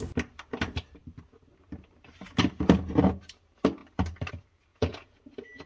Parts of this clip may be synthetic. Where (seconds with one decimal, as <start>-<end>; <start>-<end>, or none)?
4.7-5.2